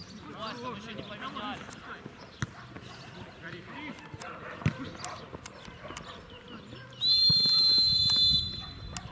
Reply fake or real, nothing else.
real